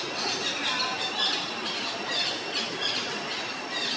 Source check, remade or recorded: recorded